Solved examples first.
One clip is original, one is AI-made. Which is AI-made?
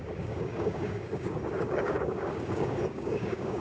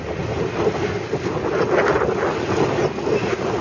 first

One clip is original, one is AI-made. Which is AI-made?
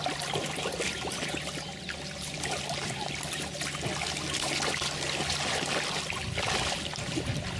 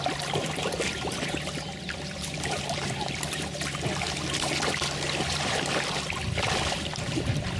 second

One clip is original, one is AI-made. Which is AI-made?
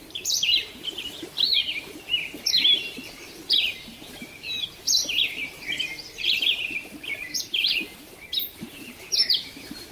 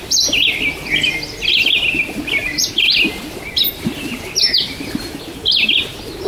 first